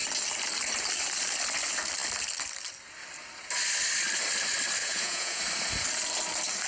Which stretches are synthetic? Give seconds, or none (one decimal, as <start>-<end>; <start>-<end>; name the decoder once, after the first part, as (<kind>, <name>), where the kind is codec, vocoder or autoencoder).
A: 4.8-5.4 (vocoder, Vocos)